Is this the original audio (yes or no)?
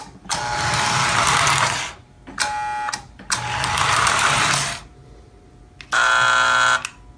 yes